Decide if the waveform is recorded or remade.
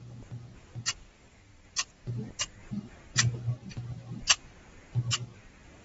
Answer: remade